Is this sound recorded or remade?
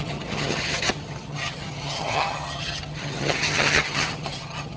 remade